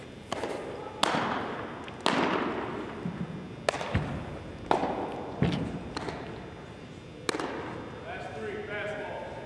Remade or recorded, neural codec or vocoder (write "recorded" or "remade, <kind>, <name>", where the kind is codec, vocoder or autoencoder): recorded